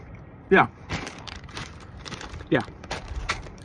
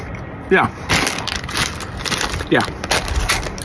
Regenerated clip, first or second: first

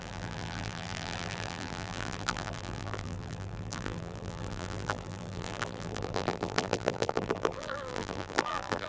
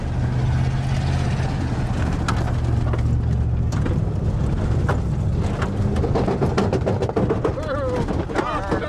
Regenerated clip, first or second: first